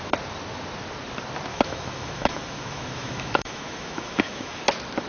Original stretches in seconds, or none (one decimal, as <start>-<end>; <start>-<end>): 0.0-1.5; 4.6-5.1